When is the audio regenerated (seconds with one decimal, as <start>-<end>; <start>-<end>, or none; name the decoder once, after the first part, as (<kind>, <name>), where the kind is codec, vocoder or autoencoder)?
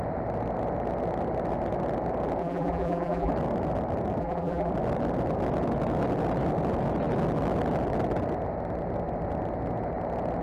2.4-3.3 (vocoder, BigVGAN v2); 4.2-4.7